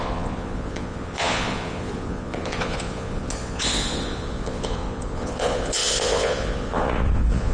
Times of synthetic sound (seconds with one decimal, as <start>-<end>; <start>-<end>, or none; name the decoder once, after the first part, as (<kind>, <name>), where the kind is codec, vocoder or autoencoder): 0.0-7.5 (vocoder, Vocos)